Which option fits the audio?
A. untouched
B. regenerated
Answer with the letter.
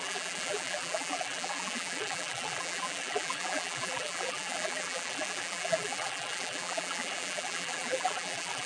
B